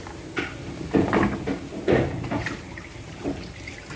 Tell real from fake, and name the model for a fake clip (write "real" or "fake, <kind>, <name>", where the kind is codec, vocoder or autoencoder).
fake, vocoder, BigVGAN v2